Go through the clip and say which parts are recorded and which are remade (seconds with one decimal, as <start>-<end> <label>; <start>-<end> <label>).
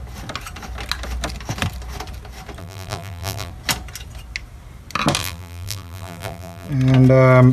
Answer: 0.0-2.6 recorded; 2.6-3.5 remade; 3.5-5.2 recorded; 5.2-6.7 remade; 6.7-7.5 recorded